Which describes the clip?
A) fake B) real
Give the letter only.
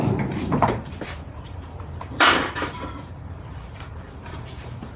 A